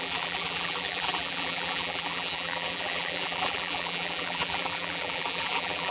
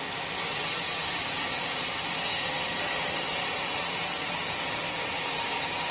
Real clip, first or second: second